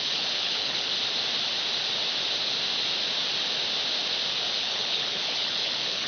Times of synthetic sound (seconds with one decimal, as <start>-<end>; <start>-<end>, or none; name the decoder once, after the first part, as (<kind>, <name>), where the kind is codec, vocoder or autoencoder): 0.0-0.9 (codec, HILCodec); 4.6-6.1